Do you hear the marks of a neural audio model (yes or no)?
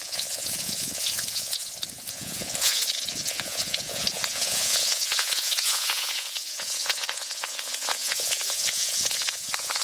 yes